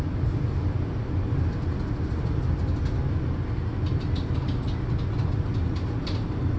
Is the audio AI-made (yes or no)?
no